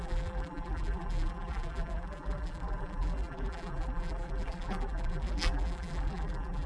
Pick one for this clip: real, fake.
fake